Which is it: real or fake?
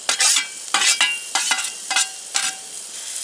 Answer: real